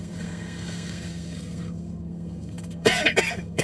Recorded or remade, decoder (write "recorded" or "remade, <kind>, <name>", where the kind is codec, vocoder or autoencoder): remade, codec, SNAC